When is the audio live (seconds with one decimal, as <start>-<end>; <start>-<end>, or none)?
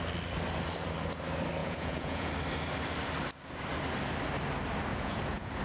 0.0-1.6; 2.3-4.9